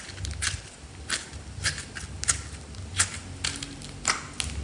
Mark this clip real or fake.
real